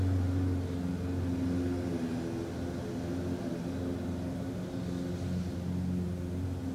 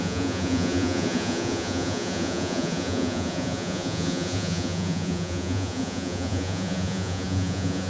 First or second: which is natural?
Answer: first